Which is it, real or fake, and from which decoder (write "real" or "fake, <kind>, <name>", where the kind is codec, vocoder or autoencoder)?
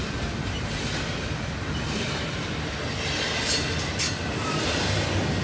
real